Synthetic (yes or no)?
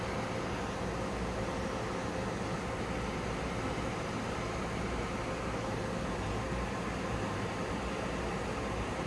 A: no